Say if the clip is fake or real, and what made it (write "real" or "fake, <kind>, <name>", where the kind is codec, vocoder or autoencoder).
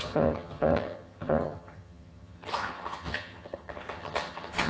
fake, vocoder, HiFi-GAN